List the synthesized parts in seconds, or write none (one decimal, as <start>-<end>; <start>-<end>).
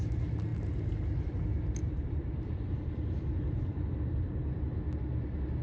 1.8-3.4